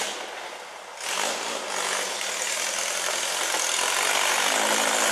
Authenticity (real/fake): real